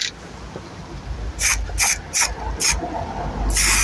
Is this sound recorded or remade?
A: recorded